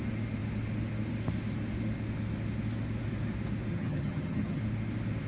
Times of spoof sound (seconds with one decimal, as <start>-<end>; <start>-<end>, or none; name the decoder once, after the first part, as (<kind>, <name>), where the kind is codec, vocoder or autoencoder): 3.7-4.6 (vocoder, HiFi-GAN)